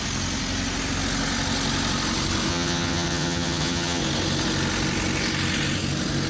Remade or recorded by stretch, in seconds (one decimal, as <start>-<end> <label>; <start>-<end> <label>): 0.0-2.5 recorded; 2.5-4.0 remade; 4.0-6.3 recorded